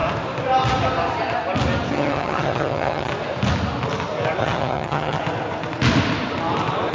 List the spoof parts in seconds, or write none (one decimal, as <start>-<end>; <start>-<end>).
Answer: 1.9-3.1; 4.4-5.2